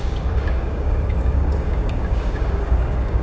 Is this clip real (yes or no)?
no